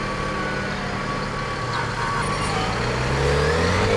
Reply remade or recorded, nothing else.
recorded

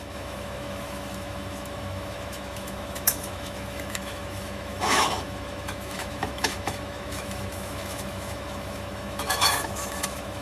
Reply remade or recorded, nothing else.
remade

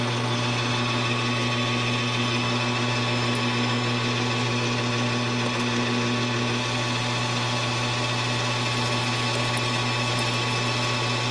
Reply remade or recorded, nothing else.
recorded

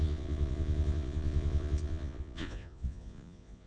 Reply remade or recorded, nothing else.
remade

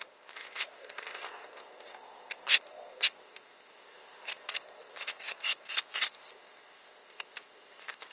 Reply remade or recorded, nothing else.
remade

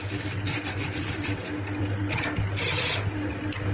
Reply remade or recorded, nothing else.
recorded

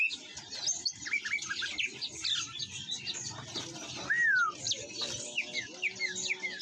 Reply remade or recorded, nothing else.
recorded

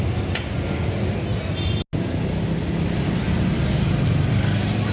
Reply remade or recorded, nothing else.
recorded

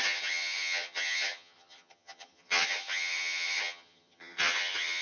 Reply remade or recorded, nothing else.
remade